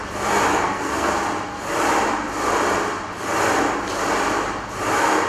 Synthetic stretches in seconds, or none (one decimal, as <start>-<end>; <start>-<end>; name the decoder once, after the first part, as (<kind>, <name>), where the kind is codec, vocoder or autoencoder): 0.5-1.1 (codec, SNAC)